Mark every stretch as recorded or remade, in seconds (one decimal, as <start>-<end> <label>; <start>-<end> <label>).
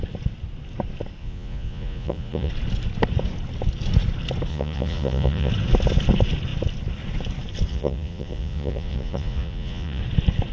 0.0-1.2 recorded; 1.2-2.5 remade; 2.5-4.5 recorded; 4.5-5.5 remade; 5.5-7.7 recorded; 7.7-10.0 remade; 10.0-10.5 recorded